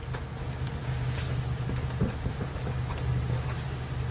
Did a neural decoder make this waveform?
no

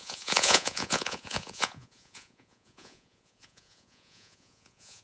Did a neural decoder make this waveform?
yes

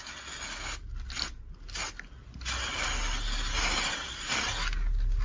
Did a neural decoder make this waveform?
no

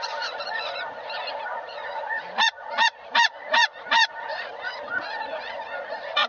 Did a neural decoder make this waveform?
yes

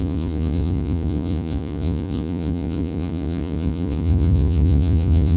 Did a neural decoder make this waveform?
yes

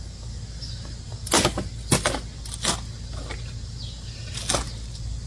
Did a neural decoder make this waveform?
no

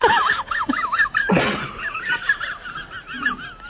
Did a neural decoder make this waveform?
no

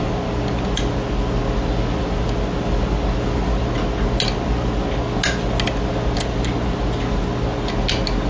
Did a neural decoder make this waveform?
no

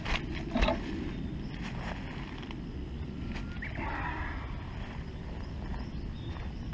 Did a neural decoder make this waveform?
no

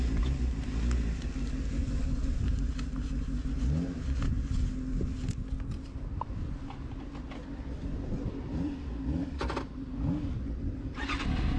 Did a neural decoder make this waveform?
no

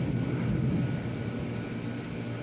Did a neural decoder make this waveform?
no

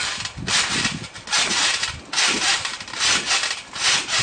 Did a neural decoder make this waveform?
no